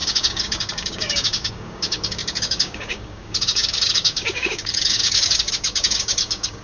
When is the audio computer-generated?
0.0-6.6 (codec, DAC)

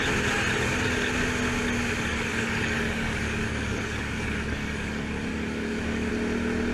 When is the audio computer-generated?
2.1-6.1 (codec, DAC)

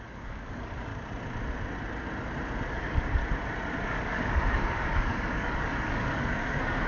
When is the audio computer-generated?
0.0-0.9 (codec, DAC); 2.7-3.2; 3.9-6.9

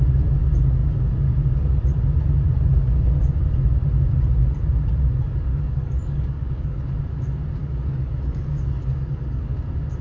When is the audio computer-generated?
5.5-6.8 (codec, DAC); 7.6-9.6

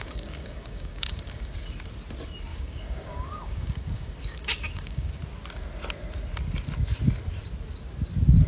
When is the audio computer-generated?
0.0-1.5 (codec, DAC); 2.5-5.1

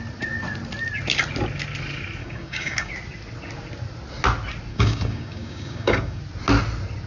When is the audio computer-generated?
2.2-2.9 (codec, DAC); 4.7-6.2